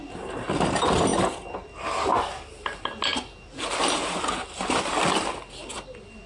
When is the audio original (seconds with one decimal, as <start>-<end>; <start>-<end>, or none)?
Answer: 0.0-6.3

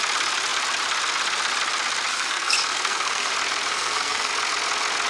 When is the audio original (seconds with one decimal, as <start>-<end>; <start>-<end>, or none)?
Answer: 0.0-2.1; 3.3-3.7; 4.3-5.1

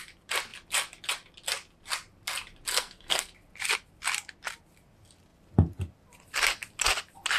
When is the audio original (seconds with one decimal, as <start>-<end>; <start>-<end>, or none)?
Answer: 0.0-2.7; 3.3-7.4

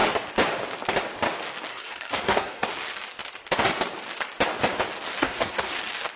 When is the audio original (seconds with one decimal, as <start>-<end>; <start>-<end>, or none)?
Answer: 0.0-1.7; 2.7-5.2; 5.7-6.2

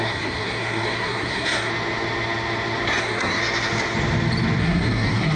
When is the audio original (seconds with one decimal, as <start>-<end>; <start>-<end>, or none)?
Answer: 1.7-3.0; 3.4-4.6

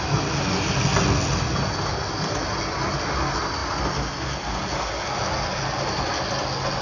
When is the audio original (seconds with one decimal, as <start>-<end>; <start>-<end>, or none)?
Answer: 0.0-6.8